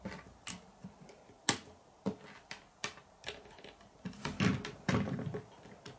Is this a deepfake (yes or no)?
no